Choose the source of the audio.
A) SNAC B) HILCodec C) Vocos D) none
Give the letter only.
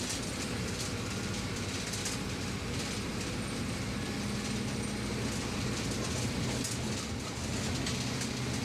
D